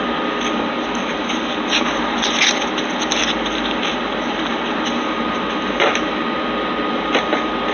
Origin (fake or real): real